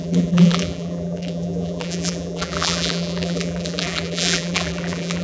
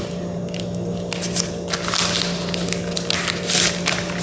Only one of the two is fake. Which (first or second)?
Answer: first